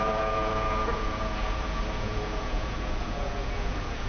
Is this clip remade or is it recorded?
remade